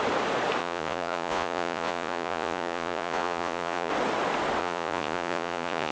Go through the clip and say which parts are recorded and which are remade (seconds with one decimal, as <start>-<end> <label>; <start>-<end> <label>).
0.0-0.6 recorded; 0.6-3.9 remade; 3.9-4.6 recorded; 4.6-5.9 remade